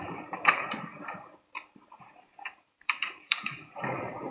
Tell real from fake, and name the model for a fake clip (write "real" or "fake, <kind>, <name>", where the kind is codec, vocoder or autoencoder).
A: fake, vocoder, BigVGAN v2